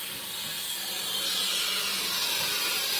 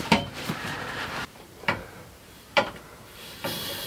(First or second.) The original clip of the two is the first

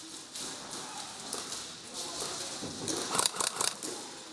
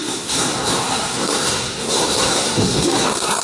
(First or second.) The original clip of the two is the first